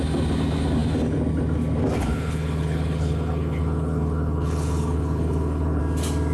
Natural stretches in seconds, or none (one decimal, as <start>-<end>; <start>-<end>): 0.0-2.0; 5.8-6.3